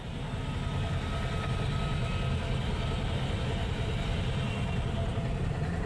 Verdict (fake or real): real